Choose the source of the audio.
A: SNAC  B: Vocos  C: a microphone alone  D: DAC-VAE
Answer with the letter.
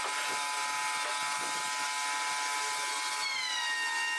C